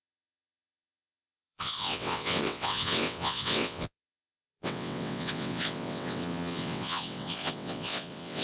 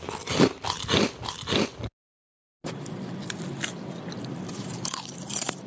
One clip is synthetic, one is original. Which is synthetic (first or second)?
first